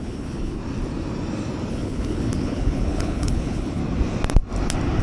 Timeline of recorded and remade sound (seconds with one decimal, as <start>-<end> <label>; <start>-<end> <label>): 0.0-0.6 remade; 0.6-1.7 recorded; 1.7-3.8 remade; 3.8-5.0 recorded